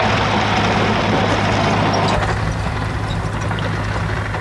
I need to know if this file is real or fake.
real